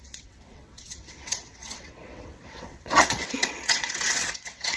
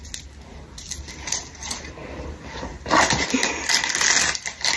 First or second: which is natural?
second